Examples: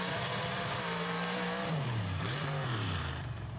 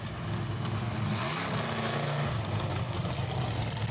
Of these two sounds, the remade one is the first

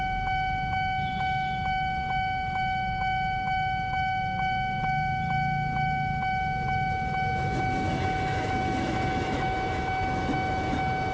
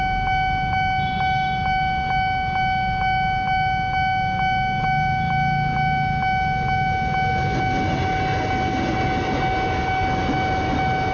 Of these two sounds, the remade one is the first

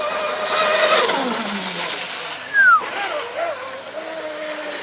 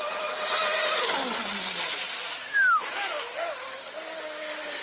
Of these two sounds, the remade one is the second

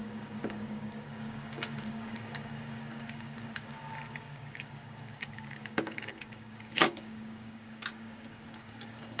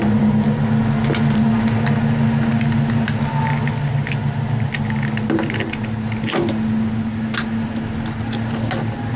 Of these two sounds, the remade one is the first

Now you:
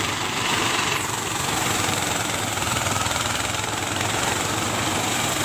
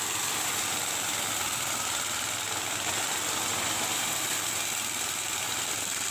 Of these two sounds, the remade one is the first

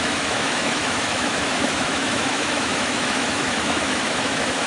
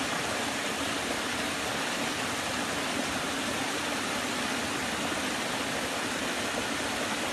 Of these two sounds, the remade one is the first